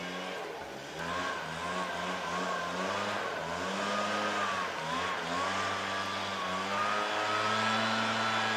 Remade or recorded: recorded